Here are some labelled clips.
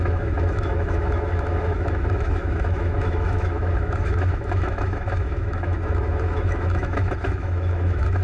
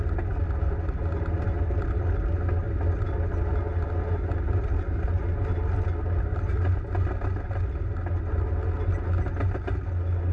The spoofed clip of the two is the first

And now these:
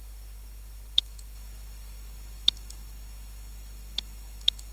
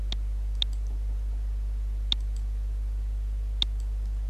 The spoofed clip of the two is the first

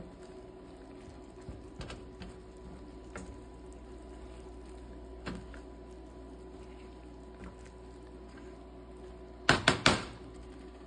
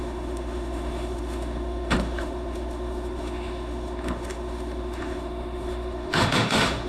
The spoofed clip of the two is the second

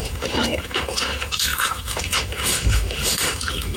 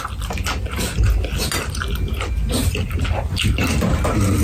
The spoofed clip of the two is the first